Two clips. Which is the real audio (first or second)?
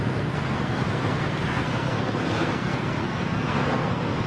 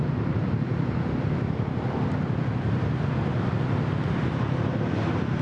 second